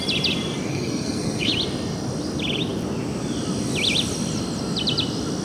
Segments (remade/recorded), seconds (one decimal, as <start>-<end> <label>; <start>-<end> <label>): 0.0-0.7 recorded; 0.7-1.5 remade; 1.5-5.4 recorded